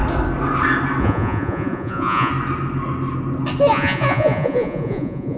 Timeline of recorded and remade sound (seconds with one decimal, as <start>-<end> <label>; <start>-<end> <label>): 0.0-1.0 recorded; 1.0-2.3 remade; 2.3-3.7 recorded; 3.7-5.4 remade